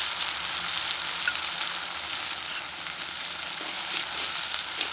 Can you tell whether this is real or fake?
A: real